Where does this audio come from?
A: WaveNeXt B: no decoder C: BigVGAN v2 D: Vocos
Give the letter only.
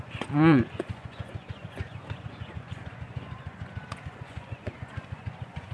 D